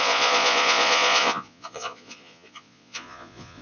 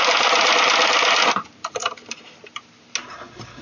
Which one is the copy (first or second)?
first